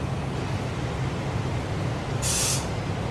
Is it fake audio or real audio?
real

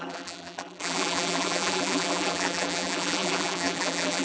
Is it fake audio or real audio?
fake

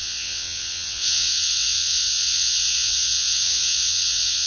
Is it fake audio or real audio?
fake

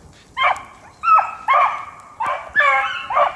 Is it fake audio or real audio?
real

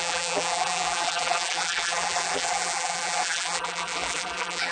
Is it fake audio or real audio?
fake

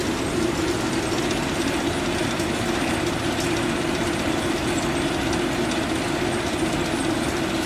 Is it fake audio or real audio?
real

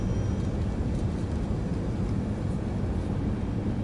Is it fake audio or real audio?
real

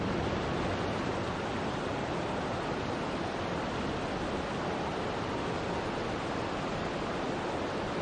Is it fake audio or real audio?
real